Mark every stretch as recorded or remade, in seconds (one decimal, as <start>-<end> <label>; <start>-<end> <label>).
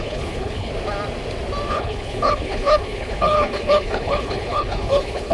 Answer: 0.0-0.7 remade; 0.7-1.7 recorded; 1.7-5.3 remade